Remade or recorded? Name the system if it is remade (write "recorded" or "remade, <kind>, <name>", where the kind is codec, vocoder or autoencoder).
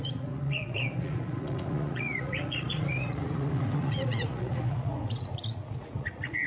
remade, vocoder, Vocos